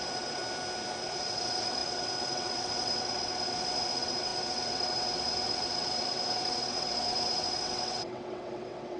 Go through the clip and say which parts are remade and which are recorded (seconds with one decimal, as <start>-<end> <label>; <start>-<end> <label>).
0.0-0.4 remade; 0.4-1.0 recorded; 1.0-9.0 remade